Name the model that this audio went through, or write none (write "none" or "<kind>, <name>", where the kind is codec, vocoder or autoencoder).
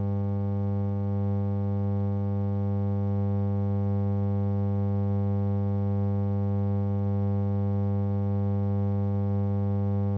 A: none